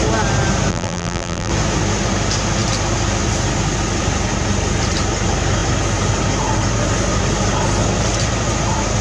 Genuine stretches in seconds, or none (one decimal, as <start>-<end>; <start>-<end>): 0.0-0.7; 1.5-9.0